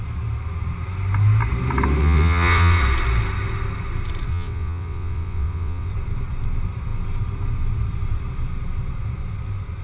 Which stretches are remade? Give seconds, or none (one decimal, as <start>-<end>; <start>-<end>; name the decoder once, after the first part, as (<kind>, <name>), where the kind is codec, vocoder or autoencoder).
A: 2.0-2.8 (vocoder, WaveNeXt); 4.3-5.9